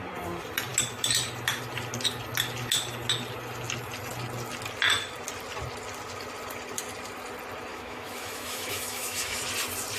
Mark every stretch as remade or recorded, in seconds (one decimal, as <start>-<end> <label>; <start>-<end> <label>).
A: 0.0-7.7 recorded; 7.7-9.4 remade; 9.4-10.0 recorded

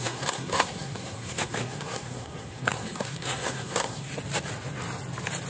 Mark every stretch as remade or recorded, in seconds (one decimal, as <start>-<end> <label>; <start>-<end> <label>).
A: 0.0-4.1 remade; 4.1-5.5 recorded